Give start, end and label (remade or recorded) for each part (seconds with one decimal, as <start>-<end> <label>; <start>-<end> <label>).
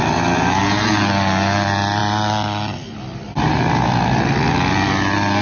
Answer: 0.0-5.4 recorded